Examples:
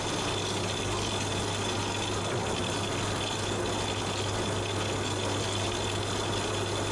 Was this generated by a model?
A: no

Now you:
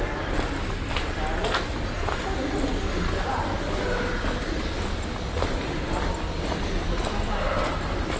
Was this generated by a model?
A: no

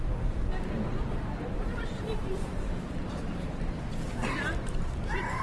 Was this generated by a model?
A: yes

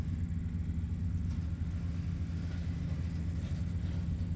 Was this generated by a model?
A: no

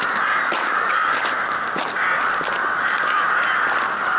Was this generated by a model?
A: no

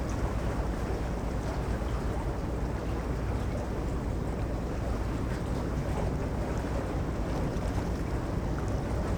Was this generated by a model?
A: no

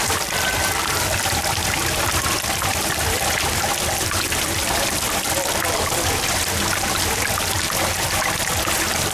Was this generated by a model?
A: no